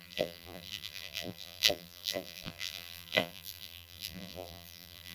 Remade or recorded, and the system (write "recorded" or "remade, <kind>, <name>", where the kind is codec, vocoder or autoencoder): remade, vocoder, BigVGAN v2